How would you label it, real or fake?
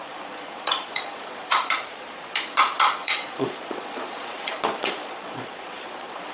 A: fake